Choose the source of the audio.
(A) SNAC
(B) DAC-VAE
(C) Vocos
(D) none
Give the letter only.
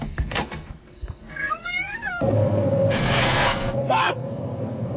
A